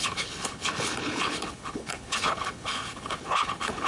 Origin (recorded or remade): remade